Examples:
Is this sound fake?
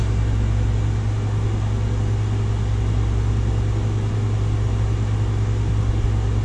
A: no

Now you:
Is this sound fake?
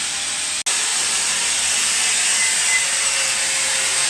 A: no